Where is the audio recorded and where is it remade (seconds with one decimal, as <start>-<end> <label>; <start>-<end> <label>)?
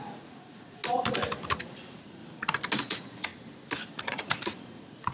0.0-0.8 remade; 0.8-1.6 recorded; 1.6-2.2 remade; 2.2-2.8 recorded; 2.8-3.3 remade; 3.3-4.0 recorded; 4.0-5.1 remade